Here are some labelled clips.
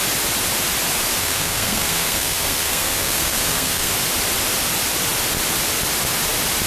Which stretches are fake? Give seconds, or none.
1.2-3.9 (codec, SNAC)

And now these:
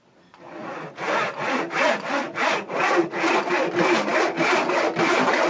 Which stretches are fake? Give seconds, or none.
0.6-1.7 (vocoder, Vocos); 2.2-3.3

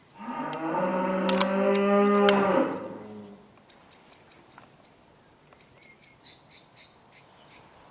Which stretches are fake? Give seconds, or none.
none

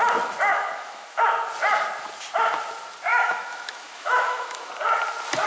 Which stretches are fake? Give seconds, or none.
0.5-1.2 (autoencoder, DAC-VAE); 3.1-4.7

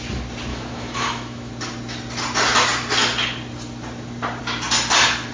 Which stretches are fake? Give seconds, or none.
0.5-1.5 (autoencoder, DAC-VAE)

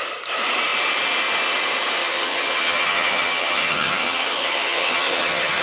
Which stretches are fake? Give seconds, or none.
2.0-5.6 (vocoder, HiFi-GAN)